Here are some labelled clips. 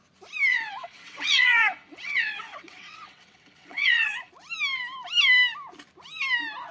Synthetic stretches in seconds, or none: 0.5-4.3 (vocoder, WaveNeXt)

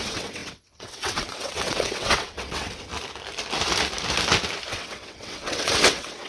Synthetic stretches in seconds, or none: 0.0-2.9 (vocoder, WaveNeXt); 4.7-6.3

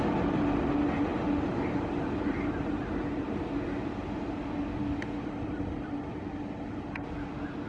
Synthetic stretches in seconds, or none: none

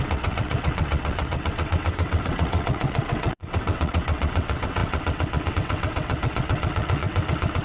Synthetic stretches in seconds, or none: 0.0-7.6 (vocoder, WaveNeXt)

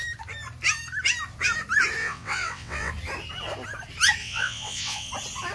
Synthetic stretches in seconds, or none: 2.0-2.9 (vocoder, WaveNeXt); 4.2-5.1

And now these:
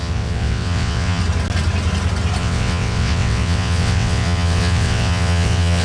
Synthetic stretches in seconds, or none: 0.0-1.2 (vocoder, WaveNeXt); 2.4-5.8